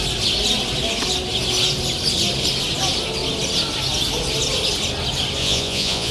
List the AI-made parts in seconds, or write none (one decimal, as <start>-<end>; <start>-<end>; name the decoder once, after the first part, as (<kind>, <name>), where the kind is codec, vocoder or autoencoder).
5.4-6.1 (vocoder, Vocos)